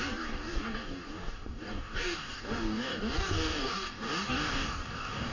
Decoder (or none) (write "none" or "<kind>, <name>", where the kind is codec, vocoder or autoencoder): codec, DAC